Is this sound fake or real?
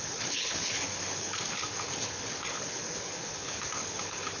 fake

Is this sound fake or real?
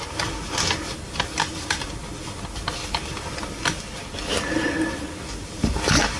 real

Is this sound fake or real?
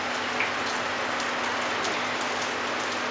real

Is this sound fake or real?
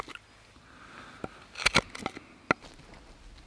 real